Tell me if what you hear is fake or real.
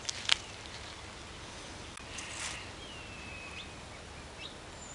real